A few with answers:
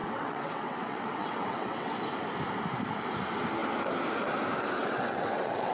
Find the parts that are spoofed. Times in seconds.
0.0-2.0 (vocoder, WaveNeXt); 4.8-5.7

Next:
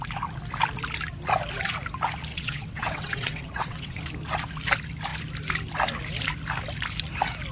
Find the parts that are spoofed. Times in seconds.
2.3-4.0 (vocoder, WaveNeXt)

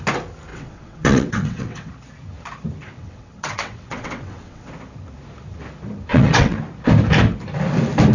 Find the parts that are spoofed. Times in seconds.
0.5-1.9 (vocoder, WaveNeXt); 2.8-4.7; 6.1-6.6

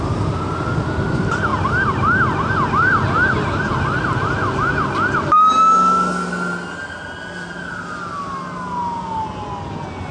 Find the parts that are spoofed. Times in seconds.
none